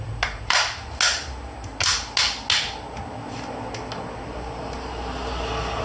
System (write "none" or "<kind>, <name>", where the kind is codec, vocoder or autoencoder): none